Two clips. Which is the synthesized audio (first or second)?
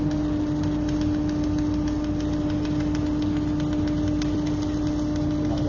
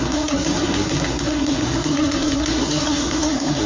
second